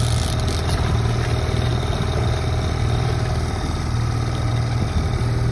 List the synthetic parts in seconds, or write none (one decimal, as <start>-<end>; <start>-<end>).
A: none